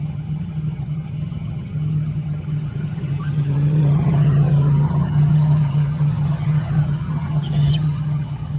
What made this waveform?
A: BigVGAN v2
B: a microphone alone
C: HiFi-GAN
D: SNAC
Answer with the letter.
C